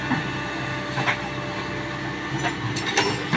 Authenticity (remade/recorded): recorded